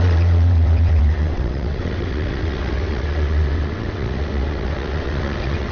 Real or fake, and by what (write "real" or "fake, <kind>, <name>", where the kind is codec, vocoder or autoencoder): fake, vocoder, WaveNeXt